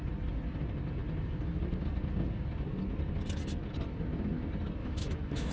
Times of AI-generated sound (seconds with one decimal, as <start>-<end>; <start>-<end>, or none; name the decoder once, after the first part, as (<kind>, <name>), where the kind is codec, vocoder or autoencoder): 4.8-5.5 (autoencoder, DAC-VAE)